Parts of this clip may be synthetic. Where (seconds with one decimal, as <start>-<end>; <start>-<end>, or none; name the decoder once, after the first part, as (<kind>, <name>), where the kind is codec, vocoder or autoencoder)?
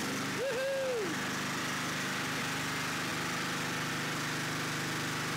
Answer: none